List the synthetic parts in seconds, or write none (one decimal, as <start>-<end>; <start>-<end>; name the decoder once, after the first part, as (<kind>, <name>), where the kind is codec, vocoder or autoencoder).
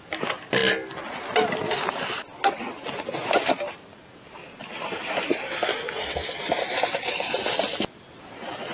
none